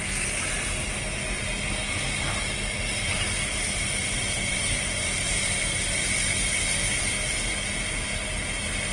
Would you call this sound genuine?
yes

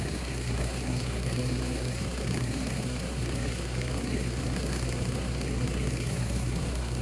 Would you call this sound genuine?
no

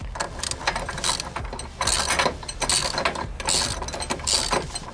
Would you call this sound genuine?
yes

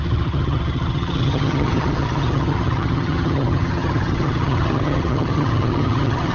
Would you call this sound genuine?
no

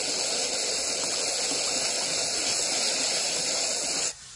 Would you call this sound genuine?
yes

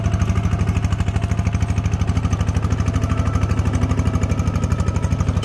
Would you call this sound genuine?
yes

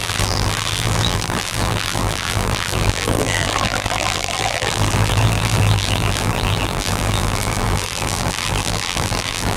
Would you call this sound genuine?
no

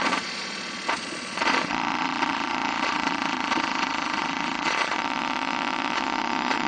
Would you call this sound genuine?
no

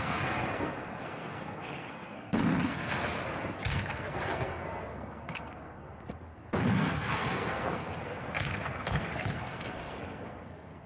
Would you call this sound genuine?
no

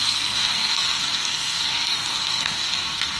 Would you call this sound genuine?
no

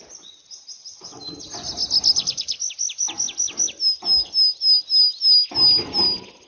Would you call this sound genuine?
yes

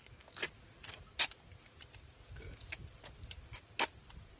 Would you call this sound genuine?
yes